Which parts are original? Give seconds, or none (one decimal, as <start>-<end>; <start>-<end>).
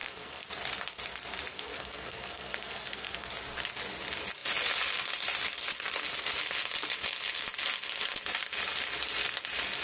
0.5-1.5; 3.3-9.8